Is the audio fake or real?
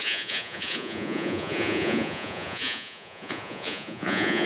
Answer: fake